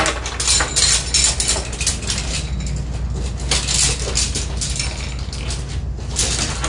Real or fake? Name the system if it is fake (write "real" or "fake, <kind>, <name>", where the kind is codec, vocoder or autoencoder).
real